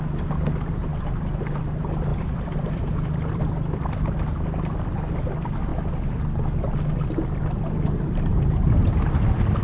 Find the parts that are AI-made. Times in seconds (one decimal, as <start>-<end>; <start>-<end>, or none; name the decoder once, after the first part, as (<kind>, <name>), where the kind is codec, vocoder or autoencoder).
0.9-1.6 (vocoder, BigVGAN v2); 2.1-3.9; 5.7-6.2; 8.3-8.9